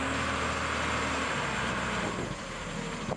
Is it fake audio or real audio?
real